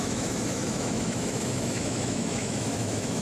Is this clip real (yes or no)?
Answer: no